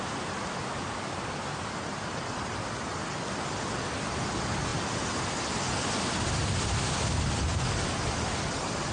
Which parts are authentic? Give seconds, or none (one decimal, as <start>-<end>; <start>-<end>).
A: 0.0-8.9